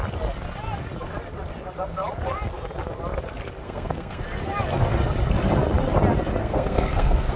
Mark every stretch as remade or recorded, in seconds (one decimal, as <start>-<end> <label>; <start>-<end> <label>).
0.0-3.6 recorded; 3.6-4.2 remade; 4.2-6.4 recorded; 6.4-7.4 remade